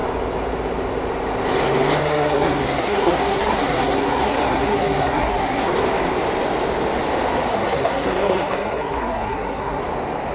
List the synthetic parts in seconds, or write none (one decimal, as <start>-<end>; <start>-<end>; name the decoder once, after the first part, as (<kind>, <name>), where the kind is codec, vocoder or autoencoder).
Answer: 2.0-5.7 (codec, SNAC); 7.5-9.8

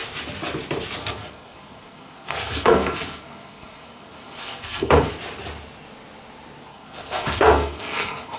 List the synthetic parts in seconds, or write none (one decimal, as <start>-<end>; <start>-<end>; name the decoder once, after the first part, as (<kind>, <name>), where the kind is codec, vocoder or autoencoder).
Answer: 1.0-5.1 (codec, SNAC); 6.7-8.4